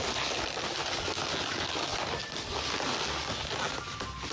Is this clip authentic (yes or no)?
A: yes